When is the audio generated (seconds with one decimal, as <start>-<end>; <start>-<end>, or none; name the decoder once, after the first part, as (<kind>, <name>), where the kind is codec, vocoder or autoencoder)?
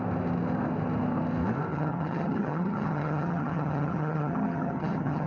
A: 1.7-5.3 (vocoder, HiFi-GAN)